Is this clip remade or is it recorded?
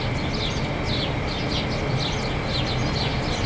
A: recorded